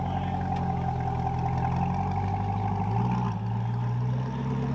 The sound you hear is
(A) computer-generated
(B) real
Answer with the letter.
B